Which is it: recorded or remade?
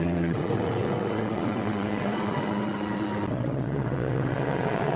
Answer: remade